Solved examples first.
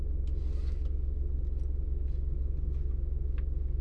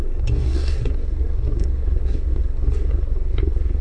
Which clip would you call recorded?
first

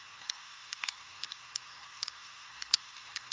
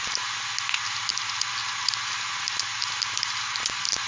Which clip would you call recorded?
second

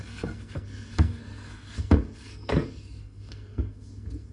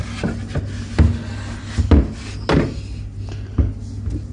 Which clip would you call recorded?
second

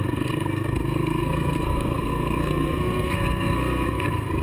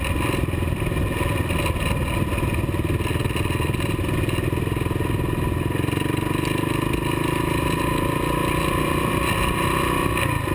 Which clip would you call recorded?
second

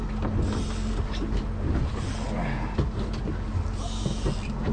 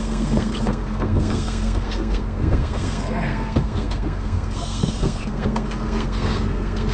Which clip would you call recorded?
first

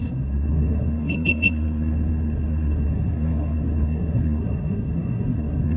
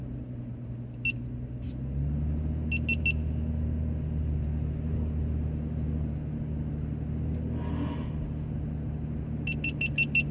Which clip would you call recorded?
second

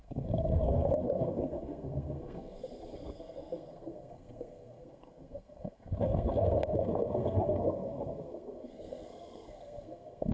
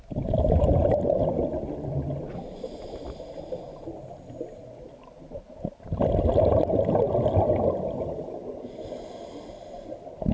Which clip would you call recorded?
second